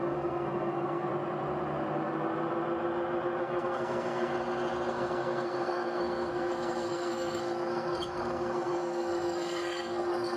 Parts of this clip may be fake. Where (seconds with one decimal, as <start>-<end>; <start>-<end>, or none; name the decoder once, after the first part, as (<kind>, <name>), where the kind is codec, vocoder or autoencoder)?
0.0-1.1 (codec, SNAC); 3.4-4.3; 4.9-10.4